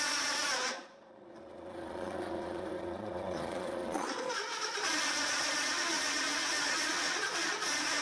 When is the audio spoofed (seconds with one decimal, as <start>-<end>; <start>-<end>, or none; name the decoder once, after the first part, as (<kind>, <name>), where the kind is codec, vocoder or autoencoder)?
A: 0.0-8.0 (vocoder, Vocos)